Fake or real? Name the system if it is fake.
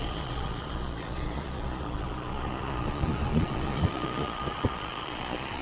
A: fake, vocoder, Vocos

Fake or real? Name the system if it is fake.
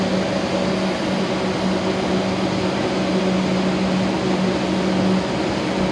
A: real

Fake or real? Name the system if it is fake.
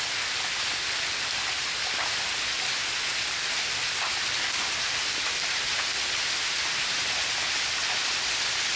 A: real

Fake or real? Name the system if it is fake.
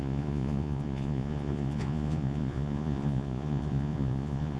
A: fake, vocoder, Vocos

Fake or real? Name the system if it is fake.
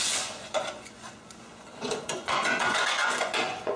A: fake, vocoder, Vocos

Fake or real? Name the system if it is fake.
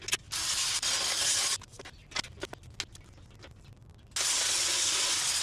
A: real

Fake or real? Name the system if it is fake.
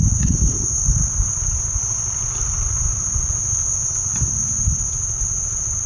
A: real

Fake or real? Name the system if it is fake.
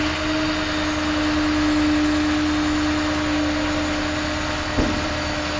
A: real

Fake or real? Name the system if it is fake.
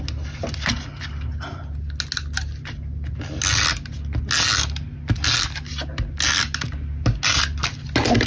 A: real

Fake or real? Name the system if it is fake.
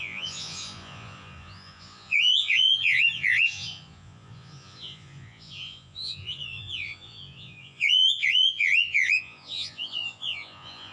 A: fake, vocoder, Vocos